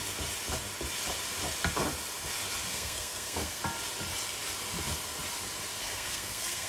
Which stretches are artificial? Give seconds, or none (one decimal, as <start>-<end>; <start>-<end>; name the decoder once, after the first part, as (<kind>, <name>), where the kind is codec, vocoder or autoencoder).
2.7-3.6 (codec, SNAC); 5.8-6.7